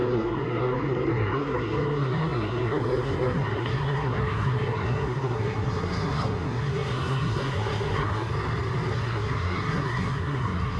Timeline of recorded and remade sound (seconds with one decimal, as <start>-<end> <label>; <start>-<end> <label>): 0.0-8.3 remade; 8.3-8.9 recorded; 8.9-10.8 remade